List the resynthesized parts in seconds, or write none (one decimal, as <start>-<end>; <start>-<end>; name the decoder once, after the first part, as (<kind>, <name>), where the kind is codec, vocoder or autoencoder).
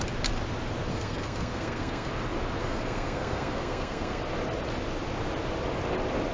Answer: 0.9-2.1 (codec, SNAC); 2.6-4.2